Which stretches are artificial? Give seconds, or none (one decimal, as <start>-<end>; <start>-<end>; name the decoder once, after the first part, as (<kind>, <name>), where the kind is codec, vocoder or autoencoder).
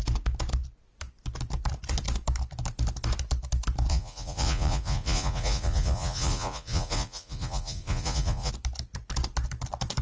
3.9-8.5 (vocoder, Vocos)